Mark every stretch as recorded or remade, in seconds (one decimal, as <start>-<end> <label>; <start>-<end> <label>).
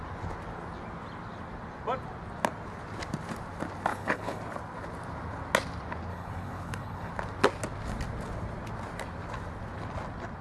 0.0-3.9 recorded; 3.9-4.4 remade; 4.4-6.1 recorded; 6.1-7.1 remade; 7.1-10.4 recorded